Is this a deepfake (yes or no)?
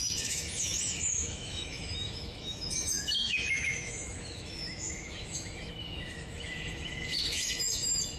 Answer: yes